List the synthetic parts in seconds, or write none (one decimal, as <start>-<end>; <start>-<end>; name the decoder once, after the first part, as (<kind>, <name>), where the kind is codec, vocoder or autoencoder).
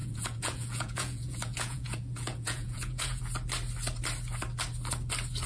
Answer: 0.0-3.2 (vocoder, Vocos)